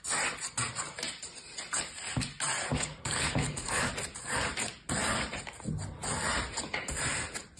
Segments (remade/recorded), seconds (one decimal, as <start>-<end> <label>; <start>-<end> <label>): 0.0-2.7 recorded; 2.7-3.9 remade; 3.9-7.6 recorded